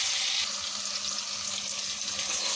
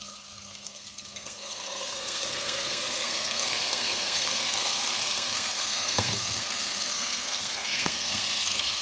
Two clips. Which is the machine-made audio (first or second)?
second